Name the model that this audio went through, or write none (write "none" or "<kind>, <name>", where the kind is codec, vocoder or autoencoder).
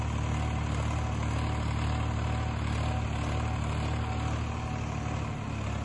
none